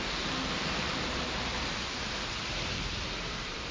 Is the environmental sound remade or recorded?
remade